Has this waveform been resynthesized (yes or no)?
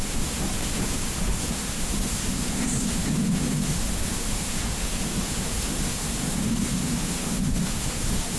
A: yes